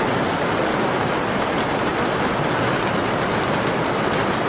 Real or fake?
real